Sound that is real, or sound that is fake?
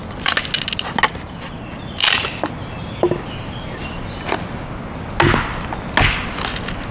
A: real